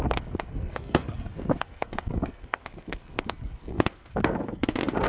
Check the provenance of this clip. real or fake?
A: fake